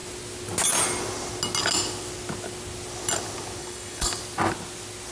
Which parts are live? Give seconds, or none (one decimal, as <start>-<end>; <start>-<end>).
0.0-3.6; 4.2-5.1